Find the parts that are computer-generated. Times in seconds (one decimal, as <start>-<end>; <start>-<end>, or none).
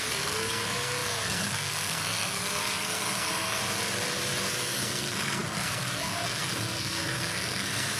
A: 0.0-3.6; 4.5-8.0